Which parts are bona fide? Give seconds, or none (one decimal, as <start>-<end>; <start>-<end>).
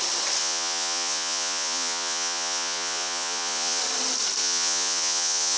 0.0-0.4; 3.8-4.4